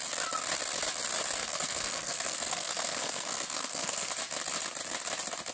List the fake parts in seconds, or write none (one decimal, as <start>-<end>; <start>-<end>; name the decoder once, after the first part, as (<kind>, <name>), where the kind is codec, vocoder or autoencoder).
1.4-4.1 (codec, SNAC)